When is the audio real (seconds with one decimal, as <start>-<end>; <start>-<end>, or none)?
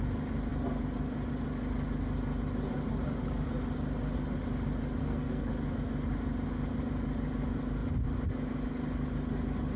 0.0-5.0; 5.5-9.8